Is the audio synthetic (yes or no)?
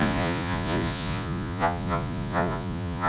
yes